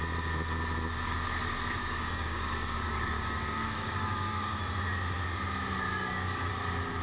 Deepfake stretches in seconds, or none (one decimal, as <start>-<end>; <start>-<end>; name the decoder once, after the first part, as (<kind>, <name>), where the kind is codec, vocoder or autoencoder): 1.8-4.7 (codec, DAC); 5.9-6.5